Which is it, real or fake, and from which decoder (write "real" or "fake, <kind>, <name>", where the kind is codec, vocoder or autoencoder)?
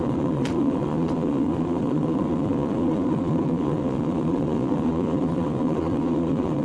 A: fake, vocoder, Vocos